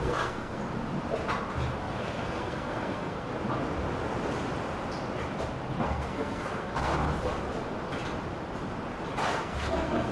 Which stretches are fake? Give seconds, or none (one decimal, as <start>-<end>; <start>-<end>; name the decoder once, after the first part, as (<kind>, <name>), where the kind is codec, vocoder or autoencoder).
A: 0.0-0.6 (codec, SNAC); 1.8-3.3; 5.8-6.9; 9.3-10.1